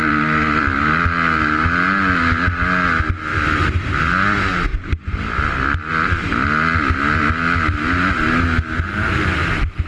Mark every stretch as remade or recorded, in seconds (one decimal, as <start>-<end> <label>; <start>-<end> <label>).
0.0-3.3 recorded; 3.3-4.0 remade; 4.0-4.7 recorded; 4.7-5.9 remade; 5.9-9.9 recorded